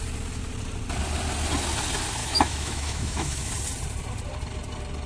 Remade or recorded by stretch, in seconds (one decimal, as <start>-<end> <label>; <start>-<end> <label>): 0.0-2.2 recorded; 2.2-3.5 remade; 3.5-5.1 recorded